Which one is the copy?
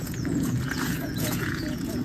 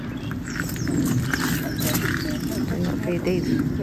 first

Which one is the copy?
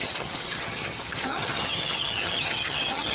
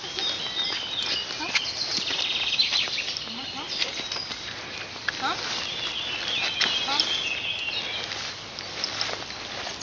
first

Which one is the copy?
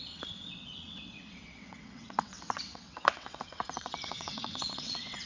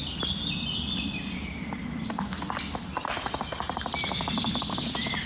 first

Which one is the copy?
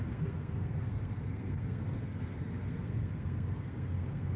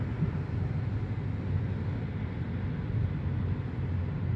first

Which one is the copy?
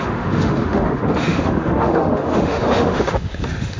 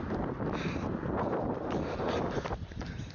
first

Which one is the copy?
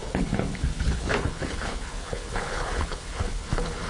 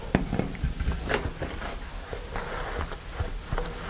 first